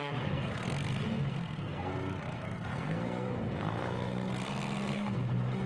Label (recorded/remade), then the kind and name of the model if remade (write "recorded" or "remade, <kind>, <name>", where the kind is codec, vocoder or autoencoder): remade, codec, SNAC